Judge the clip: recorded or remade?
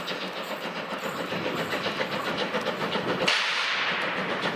recorded